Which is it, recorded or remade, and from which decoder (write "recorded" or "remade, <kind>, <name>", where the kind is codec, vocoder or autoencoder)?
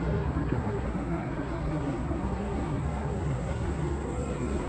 remade, codec, SNAC